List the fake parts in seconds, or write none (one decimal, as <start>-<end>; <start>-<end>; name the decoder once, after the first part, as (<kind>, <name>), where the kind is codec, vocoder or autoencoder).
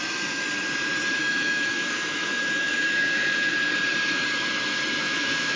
1.2-3.5 (autoencoder, DAC-VAE); 5.0-5.6